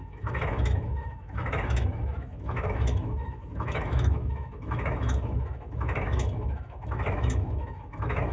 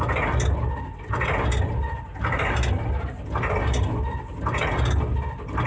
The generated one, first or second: first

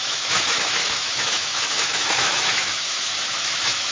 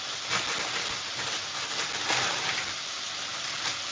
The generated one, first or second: first